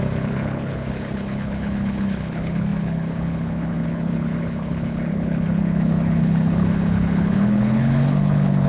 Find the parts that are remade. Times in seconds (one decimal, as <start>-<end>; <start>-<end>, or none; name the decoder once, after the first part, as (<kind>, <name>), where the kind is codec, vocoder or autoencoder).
0.0-8.7 (codec, HILCodec)